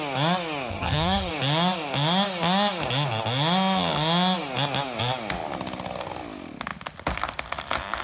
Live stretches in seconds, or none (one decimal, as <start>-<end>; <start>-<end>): 0.0-0.7; 1.3-8.0